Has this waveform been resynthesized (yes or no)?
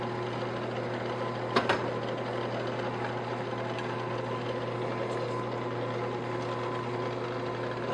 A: no